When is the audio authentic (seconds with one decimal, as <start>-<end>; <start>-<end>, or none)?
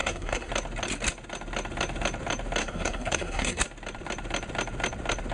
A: 0.5-2.6; 3.6-5.3